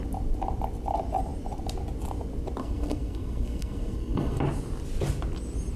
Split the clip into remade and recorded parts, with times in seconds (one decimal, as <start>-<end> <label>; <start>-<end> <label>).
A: 0.0-2.6 recorded; 2.6-4.4 remade; 4.4-5.8 recorded

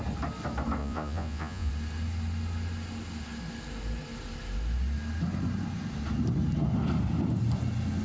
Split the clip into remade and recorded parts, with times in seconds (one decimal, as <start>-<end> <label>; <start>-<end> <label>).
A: 0.0-0.8 recorded; 0.8-1.7 remade; 1.7-8.0 recorded

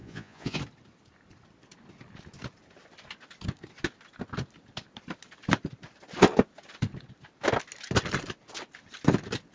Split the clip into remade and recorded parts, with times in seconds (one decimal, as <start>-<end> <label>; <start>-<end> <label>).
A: 0.0-0.6 remade; 0.6-9.5 recorded

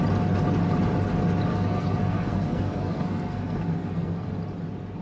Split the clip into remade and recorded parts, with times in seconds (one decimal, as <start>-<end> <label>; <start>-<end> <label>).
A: 0.0-1.5 recorded; 1.5-4.3 remade; 4.3-5.0 recorded